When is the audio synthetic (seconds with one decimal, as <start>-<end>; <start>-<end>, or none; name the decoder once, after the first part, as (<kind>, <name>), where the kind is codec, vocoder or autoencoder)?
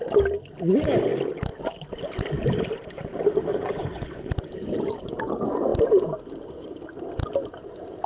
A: 3.5-4.3 (vocoder, Vocos)